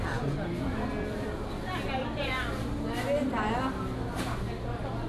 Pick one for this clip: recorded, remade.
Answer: recorded